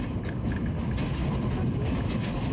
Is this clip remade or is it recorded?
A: recorded